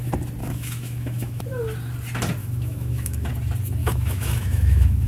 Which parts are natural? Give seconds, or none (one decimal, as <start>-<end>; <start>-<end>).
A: 0.0-0.4; 1.4-2.4; 3.3-3.8